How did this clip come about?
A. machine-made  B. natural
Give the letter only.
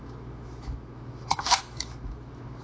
A